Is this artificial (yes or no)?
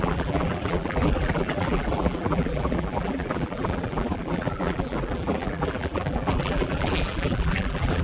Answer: yes